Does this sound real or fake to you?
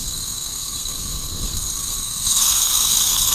fake